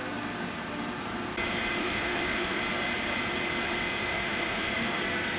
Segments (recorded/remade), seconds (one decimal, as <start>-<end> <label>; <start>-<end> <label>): 0.0-1.8 recorded; 1.8-2.6 remade; 2.6-4.0 recorded; 4.0-5.0 remade; 5.0-5.4 recorded